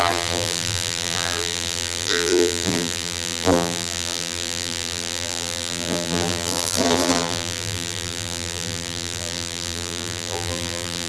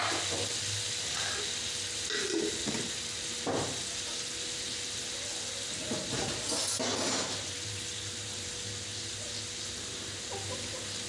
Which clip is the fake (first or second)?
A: first